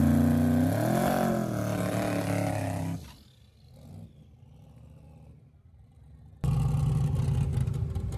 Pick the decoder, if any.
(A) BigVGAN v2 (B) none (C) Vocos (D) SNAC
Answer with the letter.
B